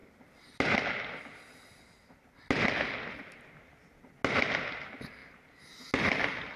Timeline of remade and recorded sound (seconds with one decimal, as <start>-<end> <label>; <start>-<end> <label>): 0.0-6.6 recorded

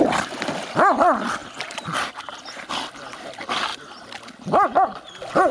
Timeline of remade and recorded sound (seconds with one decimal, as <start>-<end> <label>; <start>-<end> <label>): 0.0-5.5 recorded

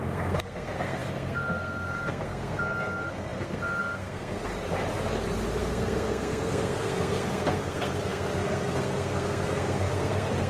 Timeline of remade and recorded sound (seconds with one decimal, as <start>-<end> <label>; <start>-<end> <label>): 0.0-4.5 remade; 4.5-5.6 recorded; 5.6-10.5 remade

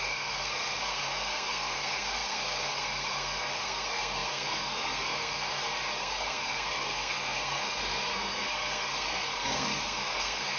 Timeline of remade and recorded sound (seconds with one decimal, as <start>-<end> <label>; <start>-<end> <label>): 0.0-5.5 remade; 5.5-6.0 recorded; 6.0-10.6 remade

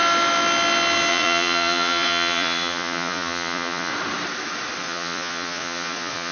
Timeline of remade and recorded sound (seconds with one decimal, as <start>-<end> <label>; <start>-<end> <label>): 0.0-1.1 recorded; 1.1-3.9 remade; 3.9-4.8 recorded; 4.8-6.3 remade

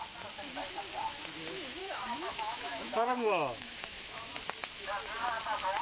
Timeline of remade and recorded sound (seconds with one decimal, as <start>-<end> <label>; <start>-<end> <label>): 0.0-1.8 recorded; 1.8-4.4 remade; 4.4-5.8 recorded

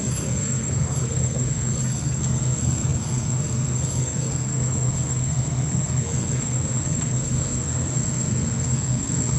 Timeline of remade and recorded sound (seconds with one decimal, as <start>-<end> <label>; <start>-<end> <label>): 0.0-9.4 remade

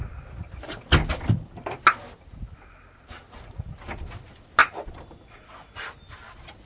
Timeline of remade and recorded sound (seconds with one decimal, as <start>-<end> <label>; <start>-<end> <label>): 0.0-6.7 remade